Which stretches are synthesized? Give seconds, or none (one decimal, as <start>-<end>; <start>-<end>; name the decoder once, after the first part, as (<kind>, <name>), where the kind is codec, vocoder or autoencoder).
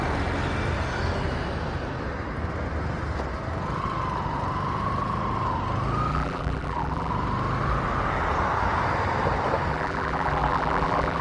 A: 6.1-7.1 (vocoder, BigVGAN v2); 9.7-11.2